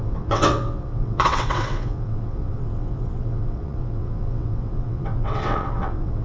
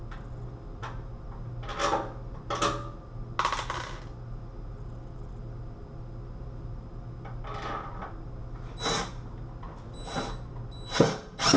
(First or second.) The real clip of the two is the second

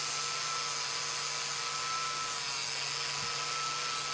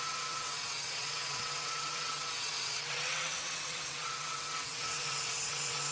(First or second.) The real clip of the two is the first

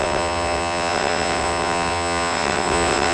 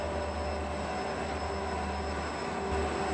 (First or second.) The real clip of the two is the second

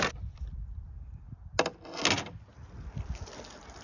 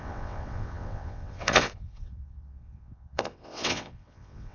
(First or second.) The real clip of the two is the first